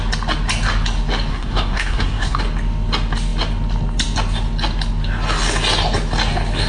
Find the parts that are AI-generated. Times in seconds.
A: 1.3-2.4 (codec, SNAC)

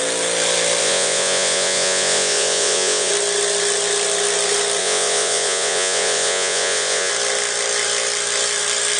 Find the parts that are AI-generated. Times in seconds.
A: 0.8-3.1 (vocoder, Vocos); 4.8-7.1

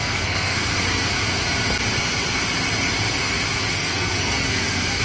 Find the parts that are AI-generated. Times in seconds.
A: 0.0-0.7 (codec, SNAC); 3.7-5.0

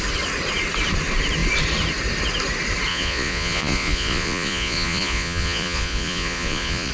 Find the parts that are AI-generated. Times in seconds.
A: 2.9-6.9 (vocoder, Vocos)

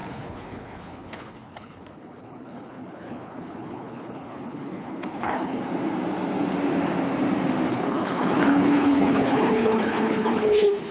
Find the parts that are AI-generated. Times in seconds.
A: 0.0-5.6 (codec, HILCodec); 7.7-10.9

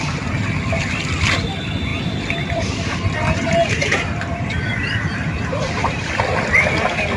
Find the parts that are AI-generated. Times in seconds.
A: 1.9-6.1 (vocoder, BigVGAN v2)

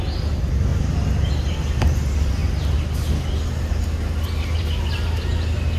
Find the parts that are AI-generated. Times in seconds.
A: none

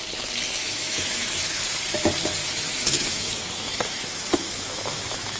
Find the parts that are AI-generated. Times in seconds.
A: 0.6-1.6 (autoencoder, DAC-VAE); 2.4-5.4